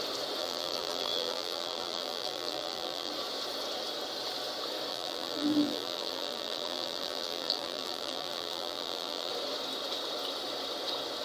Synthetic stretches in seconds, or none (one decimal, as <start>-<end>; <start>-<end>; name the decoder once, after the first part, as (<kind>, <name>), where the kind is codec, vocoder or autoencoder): 0.4-3.1 (vocoder, BigVGAN v2); 4.9-9.3